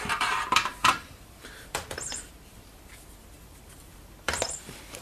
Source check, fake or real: fake